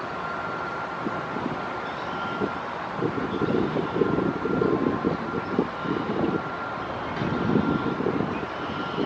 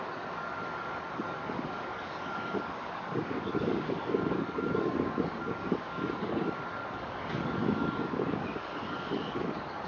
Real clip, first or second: first